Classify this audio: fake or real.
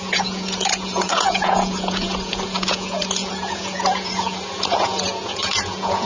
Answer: fake